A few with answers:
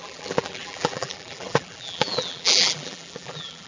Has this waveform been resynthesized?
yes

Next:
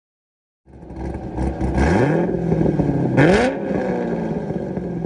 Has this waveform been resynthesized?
no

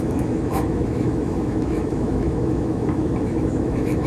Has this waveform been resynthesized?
yes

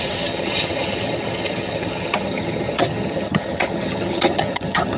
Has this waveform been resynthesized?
yes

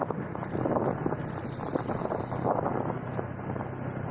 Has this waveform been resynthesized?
no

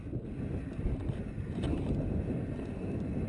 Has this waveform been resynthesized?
no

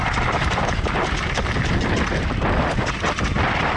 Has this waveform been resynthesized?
no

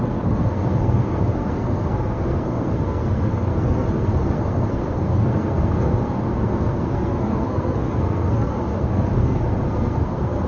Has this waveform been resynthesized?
yes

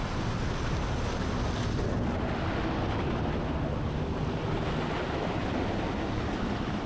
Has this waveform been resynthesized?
no